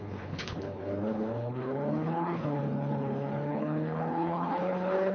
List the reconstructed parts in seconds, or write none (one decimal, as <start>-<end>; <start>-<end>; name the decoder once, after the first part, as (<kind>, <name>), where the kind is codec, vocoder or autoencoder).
0.0-5.1 (codec, HILCodec)